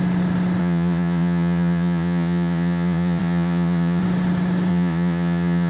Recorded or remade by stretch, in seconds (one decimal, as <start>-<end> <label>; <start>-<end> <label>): 0.0-0.6 recorded; 0.6-4.0 remade; 4.0-4.7 recorded; 4.7-5.7 remade